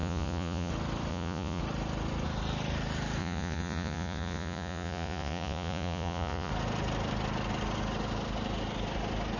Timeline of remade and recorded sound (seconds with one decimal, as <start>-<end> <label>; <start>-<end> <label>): 0.0-0.7 remade; 0.7-1.1 recorded; 1.1-1.6 remade; 1.6-3.2 recorded; 3.2-6.5 remade; 6.5-9.4 recorded